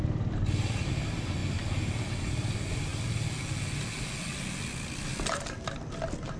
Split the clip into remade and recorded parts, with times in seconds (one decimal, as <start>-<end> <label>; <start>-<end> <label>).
0.0-6.4 recorded